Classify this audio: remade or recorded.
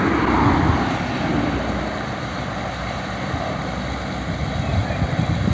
recorded